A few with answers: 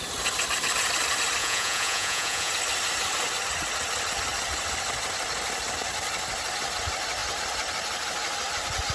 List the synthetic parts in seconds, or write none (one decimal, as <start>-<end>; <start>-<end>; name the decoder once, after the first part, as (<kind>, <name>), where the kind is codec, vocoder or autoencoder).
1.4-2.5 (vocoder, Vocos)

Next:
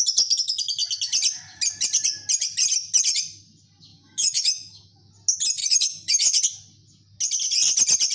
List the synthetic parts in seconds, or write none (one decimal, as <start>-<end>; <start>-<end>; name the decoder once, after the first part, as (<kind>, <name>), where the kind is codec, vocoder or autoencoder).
3.9-5.1 (autoencoder, DAC-VAE); 5.6-6.4

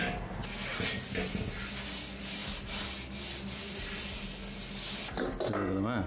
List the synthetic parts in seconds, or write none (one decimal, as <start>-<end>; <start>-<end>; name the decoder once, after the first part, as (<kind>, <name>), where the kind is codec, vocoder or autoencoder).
none